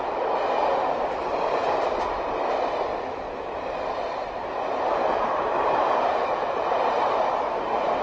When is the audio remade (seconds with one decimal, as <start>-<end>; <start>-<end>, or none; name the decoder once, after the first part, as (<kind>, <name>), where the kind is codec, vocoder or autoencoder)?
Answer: 4.4-8.0 (vocoder, BigVGAN v2)